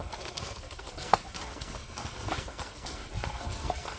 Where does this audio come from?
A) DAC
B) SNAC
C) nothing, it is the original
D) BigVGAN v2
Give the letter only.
B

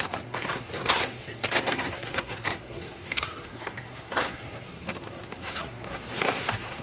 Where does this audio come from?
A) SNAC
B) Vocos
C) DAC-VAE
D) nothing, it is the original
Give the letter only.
A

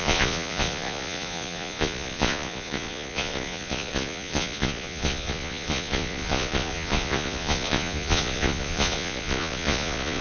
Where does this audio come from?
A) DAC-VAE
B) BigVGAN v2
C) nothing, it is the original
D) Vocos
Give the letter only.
D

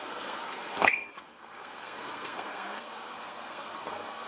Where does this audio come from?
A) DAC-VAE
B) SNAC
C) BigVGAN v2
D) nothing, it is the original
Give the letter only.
B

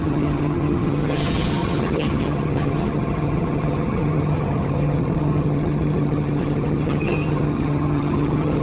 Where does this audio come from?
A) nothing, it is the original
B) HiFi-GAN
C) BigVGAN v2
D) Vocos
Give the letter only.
B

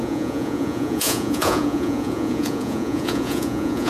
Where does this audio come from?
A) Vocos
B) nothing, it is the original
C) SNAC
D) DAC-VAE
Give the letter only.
A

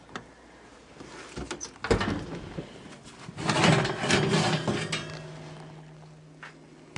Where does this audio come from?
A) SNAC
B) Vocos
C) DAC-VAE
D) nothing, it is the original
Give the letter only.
D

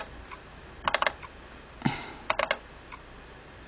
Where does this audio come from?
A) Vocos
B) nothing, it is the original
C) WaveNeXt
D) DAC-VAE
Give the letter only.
B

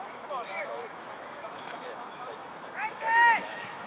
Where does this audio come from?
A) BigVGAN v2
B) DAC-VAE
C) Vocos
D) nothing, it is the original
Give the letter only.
B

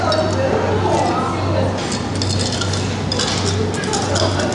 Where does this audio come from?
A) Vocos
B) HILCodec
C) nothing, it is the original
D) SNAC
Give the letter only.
C